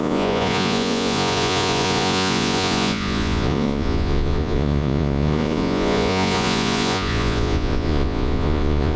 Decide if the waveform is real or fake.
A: fake